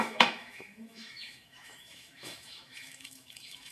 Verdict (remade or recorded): remade